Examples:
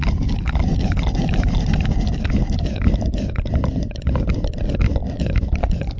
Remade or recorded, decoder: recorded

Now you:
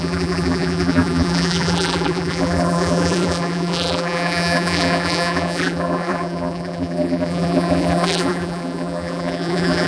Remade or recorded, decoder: remade, vocoder, BigVGAN v2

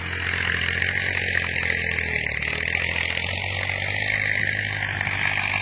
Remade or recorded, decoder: recorded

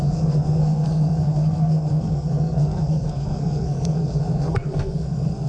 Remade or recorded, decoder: remade, codec, SNAC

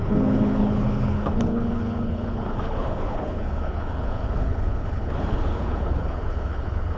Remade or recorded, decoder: remade, codec, HILCodec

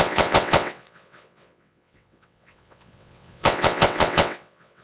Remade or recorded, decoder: remade, vocoder, WaveNeXt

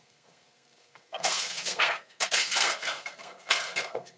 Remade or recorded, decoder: remade, codec, SNAC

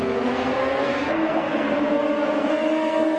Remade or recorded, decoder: remade, codec, SNAC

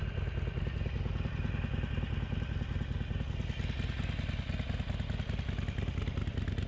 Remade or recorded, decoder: recorded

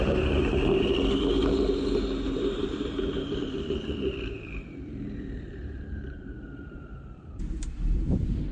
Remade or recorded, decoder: remade, vocoder, BigVGAN v2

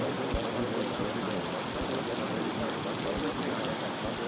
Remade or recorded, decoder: recorded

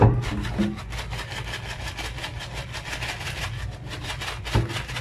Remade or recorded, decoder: recorded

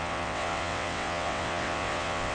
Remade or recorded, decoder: remade, vocoder, WaveNeXt